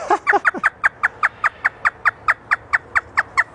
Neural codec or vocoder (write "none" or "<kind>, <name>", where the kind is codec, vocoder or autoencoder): none